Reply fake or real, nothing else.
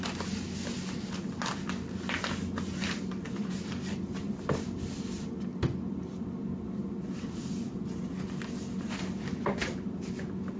real